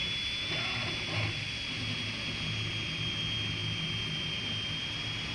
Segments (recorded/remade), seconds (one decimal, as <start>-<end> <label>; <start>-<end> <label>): 0.0-5.3 recorded